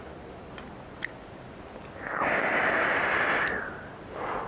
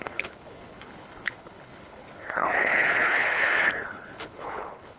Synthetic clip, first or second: second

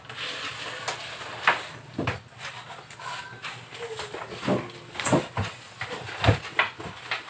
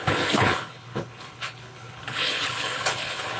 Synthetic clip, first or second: second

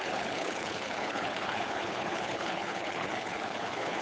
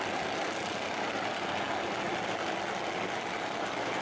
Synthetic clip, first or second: first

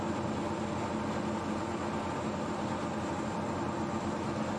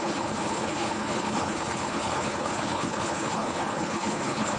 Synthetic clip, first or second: second